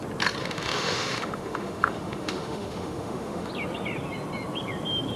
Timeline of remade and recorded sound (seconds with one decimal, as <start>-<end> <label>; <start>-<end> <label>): 0.0-0.4 recorded; 0.4-3.5 remade; 3.5-5.2 recorded